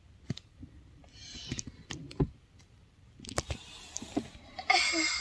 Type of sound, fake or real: real